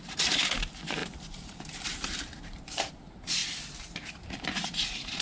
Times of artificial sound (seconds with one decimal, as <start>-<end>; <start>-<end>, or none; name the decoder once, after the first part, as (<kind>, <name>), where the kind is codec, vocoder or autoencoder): 0.0-3.4 (vocoder, BigVGAN v2); 4.1-5.2